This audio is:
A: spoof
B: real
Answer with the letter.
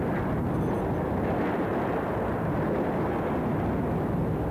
B